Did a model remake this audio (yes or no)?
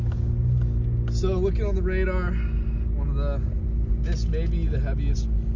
no